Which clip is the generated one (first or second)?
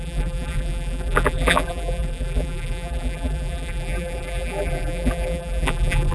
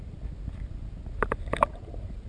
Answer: first